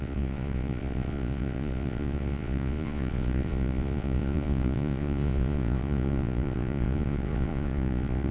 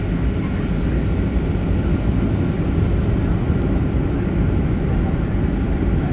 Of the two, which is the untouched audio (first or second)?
second